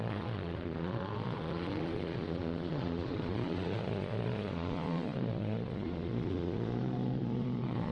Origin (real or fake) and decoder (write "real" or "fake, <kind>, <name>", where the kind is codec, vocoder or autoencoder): fake, vocoder, Vocos